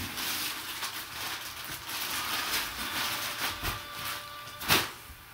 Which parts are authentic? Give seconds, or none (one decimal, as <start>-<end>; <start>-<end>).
0.0-5.3